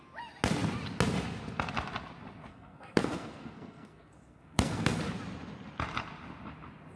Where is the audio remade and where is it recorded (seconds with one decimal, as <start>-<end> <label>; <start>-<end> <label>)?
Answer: 0.0-2.5 recorded; 2.5-5.0 remade; 5.0-7.0 recorded